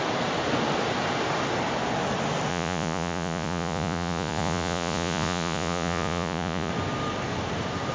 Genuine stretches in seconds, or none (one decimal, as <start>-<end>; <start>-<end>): 0.0-2.5; 6.7-7.9